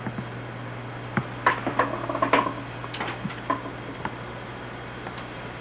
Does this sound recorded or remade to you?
recorded